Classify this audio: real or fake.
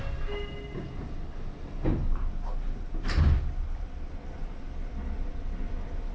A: real